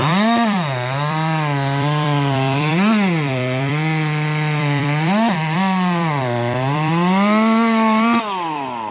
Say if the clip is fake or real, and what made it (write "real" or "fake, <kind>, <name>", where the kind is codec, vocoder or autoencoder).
fake, vocoder, BigVGAN v2